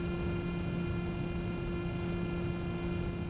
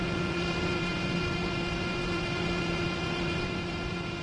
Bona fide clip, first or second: first